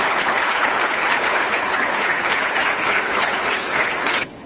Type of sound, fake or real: fake